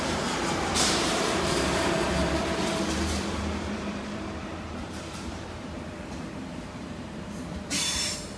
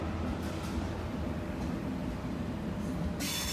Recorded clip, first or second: second